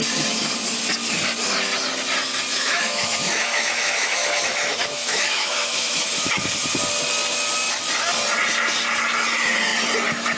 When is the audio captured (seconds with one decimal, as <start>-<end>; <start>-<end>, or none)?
0.0-2.5; 6.3-10.4